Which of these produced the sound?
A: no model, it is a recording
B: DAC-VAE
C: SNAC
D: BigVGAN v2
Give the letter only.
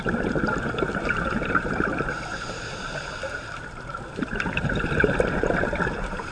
D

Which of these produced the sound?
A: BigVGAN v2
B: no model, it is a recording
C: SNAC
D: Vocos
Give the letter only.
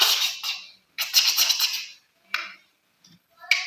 B